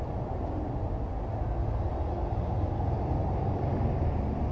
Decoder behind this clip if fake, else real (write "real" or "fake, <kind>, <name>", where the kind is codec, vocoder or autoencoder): real